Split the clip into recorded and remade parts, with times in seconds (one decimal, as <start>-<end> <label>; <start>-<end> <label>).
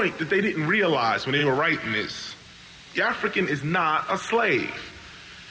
0.0-5.5 recorded